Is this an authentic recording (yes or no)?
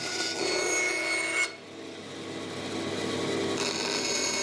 yes